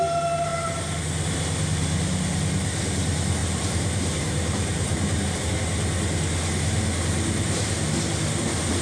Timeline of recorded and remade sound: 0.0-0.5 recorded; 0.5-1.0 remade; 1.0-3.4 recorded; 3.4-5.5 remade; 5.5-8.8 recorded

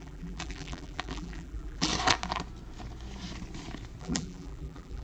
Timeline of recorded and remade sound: 0.0-1.9 remade; 1.9-4.0 recorded; 4.0-5.0 remade

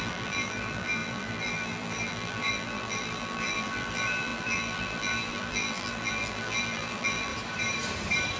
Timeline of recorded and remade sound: 0.0-7.3 remade; 7.3-8.4 recorded

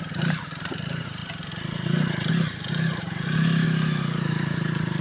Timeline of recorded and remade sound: 0.0-1.2 remade; 1.2-4.2 recorded; 4.2-5.0 remade

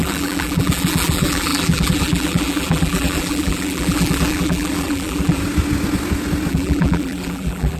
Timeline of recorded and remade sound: 0.0-5.4 remade; 5.4-6.5 recorded; 6.5-7.8 remade